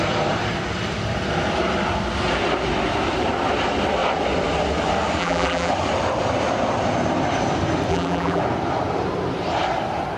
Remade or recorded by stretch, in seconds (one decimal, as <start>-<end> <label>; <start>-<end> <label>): 0.0-5.2 recorded; 5.2-5.7 remade; 5.7-7.9 recorded; 7.9-8.4 remade; 8.4-10.2 recorded